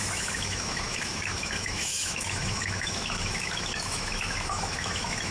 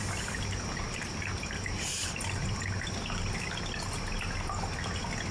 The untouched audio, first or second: second